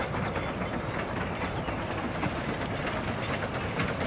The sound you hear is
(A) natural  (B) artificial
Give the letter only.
A